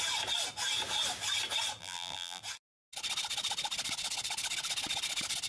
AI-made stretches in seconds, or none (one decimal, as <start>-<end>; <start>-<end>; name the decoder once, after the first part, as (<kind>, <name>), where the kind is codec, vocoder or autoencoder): 1.8-2.4 (vocoder, BigVGAN v2)